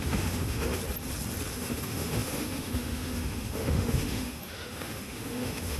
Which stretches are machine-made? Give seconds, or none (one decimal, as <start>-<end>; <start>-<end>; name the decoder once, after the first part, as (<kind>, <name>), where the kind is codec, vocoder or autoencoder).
0.0-0.8 (autoencoder, DAC-VAE); 1.5-5.8